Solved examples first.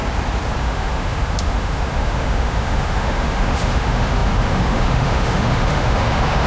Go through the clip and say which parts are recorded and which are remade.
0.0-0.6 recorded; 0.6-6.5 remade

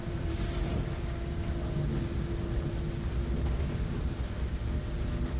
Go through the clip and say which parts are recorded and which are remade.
0.0-0.8 remade; 0.8-5.4 recorded

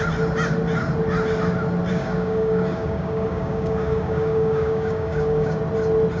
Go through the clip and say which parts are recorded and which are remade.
0.0-1.9 recorded; 1.9-5.6 remade; 5.6-6.2 recorded

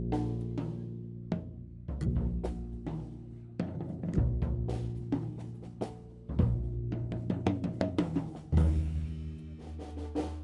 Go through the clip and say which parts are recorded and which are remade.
0.0-2.1 recorded; 2.1-4.2 remade; 4.2-5.0 recorded; 5.0-9.1 remade; 9.1-10.4 recorded

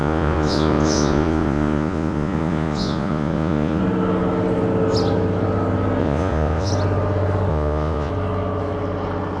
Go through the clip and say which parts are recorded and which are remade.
0.0-3.8 remade; 3.8-6.0 recorded; 6.0-6.7 remade; 6.7-7.5 recorded; 7.5-8.1 remade; 8.1-9.4 recorded

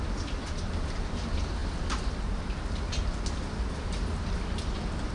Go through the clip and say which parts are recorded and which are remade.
0.0-5.1 recorded

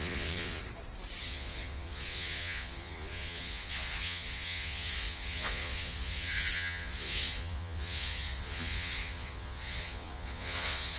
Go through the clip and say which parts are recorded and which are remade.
0.0-0.6 remade; 0.6-1.2 recorded; 1.2-11.0 remade